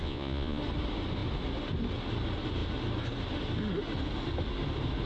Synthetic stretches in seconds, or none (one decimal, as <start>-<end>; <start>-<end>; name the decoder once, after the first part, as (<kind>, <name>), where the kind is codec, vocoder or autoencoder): 0.0-0.6 (vocoder, Vocos)